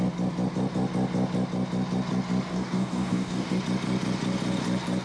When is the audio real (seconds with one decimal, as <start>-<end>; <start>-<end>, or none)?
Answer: 0.0-2.5; 3.6-5.0